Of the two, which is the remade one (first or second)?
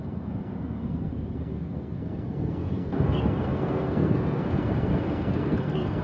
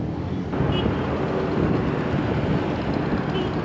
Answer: first